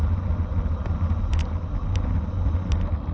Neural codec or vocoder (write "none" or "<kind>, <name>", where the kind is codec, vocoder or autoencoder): none